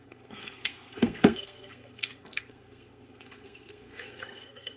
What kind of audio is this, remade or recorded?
remade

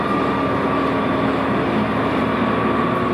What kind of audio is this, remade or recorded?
recorded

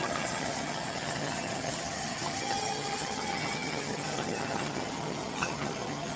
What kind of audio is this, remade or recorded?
remade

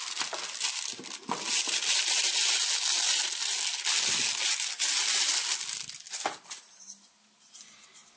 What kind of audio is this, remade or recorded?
recorded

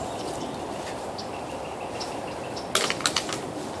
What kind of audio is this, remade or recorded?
recorded